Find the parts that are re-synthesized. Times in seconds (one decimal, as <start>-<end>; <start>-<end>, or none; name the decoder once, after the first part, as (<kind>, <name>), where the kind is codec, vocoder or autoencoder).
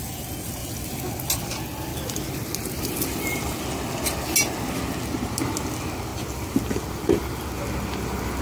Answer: none